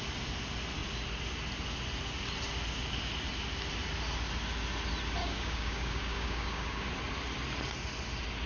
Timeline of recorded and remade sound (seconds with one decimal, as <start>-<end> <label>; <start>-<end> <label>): 0.0-5.2 recorded; 5.2-6.8 remade; 6.8-8.5 recorded